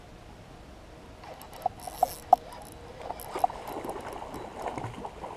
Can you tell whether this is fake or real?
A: real